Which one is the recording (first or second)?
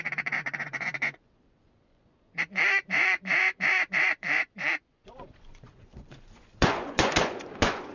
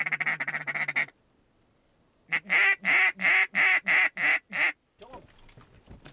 second